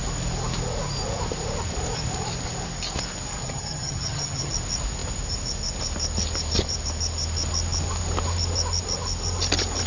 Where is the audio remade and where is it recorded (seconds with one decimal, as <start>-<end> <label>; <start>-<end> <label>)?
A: 0.0-3.4 recorded; 3.4-4.5 remade; 4.5-9.9 recorded